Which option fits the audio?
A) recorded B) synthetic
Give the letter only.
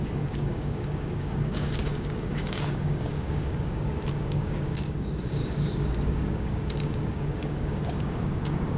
B